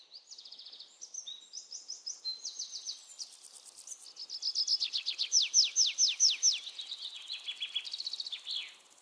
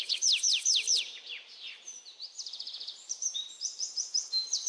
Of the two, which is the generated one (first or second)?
second